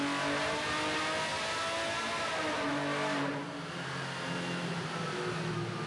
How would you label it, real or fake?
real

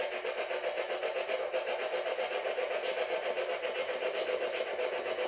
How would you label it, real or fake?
real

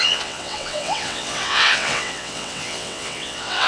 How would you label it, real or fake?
fake